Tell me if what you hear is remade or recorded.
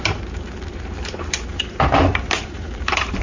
remade